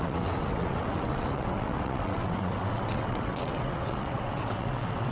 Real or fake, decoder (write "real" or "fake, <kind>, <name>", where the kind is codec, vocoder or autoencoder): fake, vocoder, WaveNeXt